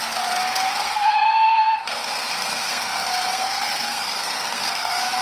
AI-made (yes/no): yes